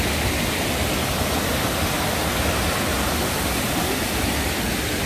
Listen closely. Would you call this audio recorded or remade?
recorded